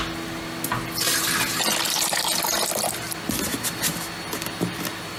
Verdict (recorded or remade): recorded